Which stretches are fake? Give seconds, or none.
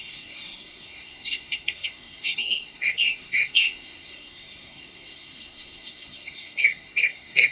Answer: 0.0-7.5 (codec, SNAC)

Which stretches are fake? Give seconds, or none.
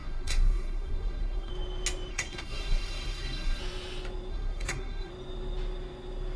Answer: 0.0-1.5 (codec, SNAC); 2.1-3.6; 4.3-5.1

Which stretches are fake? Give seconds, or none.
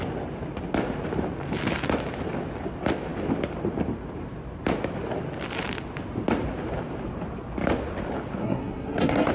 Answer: 8.4-9.3 (codec, SNAC)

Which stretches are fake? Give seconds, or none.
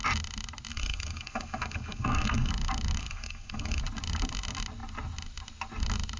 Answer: 0.7-2.5 (codec, SNAC); 3.0-3.8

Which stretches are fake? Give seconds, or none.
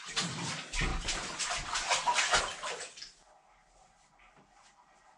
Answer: none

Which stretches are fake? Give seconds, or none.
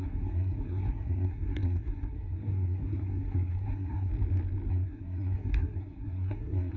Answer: 0.0-4.1 (codec, SNAC); 4.7-6.8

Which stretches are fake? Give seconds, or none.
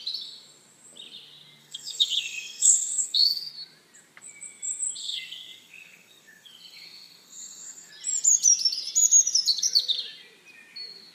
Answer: 1.6-3.5 (codec, SNAC); 5.0-7.9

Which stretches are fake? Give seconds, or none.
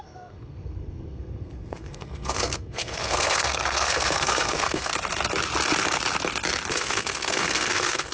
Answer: 0.0-4.9 (codec, SNAC); 6.7-8.1